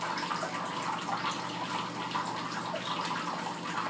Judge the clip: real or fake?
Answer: real